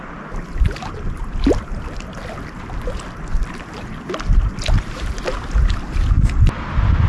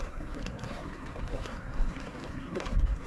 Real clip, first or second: first